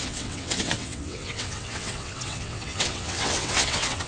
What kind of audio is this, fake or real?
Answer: fake